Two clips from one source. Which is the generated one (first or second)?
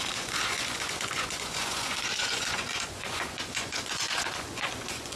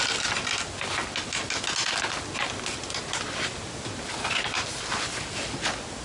first